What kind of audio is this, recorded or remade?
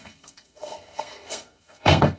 remade